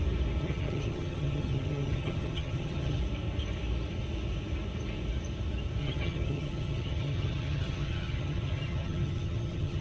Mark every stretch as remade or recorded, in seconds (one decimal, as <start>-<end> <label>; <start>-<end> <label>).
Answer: 0.0-0.4 recorded; 0.4-3.0 remade; 3.0-5.8 recorded; 5.8-9.8 remade